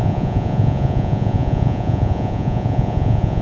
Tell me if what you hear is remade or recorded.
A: remade